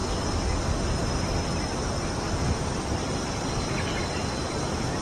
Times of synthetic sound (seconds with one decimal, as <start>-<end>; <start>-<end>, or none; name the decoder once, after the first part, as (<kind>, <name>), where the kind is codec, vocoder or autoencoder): none